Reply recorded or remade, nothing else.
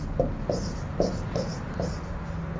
recorded